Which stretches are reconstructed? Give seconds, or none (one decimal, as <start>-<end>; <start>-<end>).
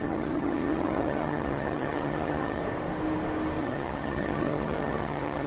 0.0-2.6; 3.6-5.5